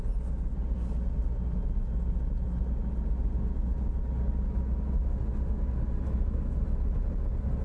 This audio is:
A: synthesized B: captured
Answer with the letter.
B